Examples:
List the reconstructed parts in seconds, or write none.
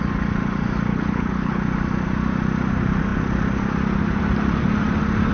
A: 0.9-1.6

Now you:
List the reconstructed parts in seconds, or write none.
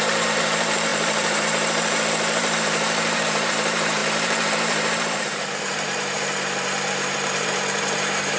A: 0.0-8.4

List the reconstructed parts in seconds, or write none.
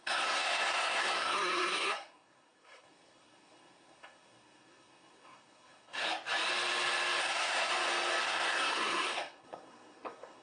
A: 0.0-6.0; 7.2-7.7; 8.2-10.4